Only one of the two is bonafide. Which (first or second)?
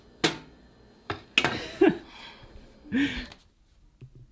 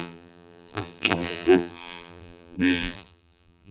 first